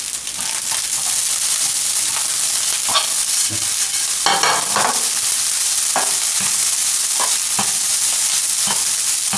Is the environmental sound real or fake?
real